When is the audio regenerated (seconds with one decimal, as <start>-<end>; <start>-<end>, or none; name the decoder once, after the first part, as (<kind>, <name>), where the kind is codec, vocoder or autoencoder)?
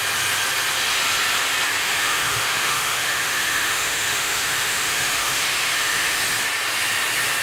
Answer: 1.8-6.2 (autoencoder, DAC-VAE)